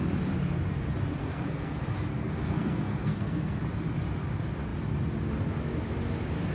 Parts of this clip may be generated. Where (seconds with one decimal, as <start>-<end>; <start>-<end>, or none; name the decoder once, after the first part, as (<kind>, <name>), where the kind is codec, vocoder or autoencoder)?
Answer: 1.2-1.8 (codec, SNAC); 2.2-3.6